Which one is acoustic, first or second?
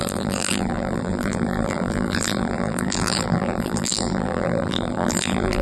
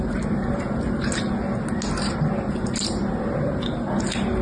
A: second